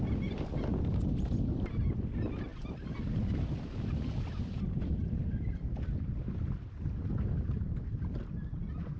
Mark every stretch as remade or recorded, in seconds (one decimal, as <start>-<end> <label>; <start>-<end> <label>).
0.0-9.0 recorded